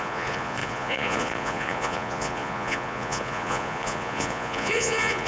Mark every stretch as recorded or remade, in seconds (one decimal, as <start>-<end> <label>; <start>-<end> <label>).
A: 0.0-5.3 remade